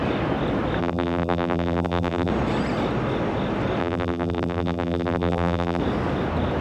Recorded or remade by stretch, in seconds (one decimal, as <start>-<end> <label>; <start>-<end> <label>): 0.0-0.8 recorded; 0.8-2.3 remade; 2.3-3.8 recorded; 3.8-5.8 remade; 5.8-6.6 recorded